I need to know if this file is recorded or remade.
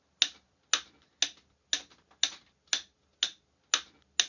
recorded